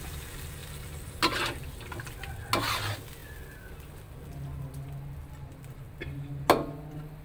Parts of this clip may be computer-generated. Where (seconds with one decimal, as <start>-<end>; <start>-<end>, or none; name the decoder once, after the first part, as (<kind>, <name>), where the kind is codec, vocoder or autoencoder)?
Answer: 0.6-1.2 (vocoder, BigVGAN v2)